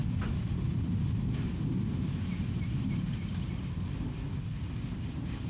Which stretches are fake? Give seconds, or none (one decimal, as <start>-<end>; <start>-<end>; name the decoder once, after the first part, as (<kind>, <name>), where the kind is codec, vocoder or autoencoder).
none